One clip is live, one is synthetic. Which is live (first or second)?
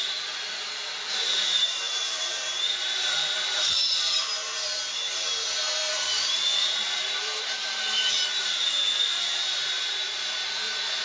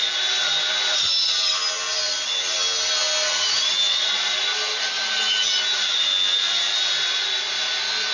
second